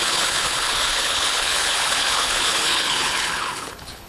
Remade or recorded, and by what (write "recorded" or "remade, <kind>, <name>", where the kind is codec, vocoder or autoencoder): remade, codec, HILCodec